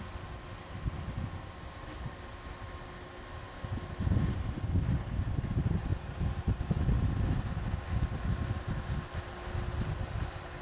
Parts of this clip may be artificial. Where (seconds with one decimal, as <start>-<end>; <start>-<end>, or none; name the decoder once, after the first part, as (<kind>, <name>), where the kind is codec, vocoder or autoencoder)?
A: none